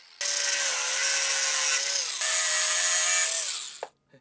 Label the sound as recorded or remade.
recorded